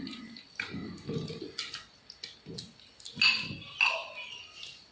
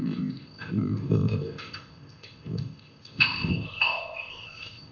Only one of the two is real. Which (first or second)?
first